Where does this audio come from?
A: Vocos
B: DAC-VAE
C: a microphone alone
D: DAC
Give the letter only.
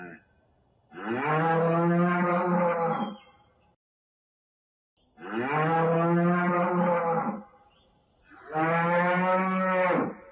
C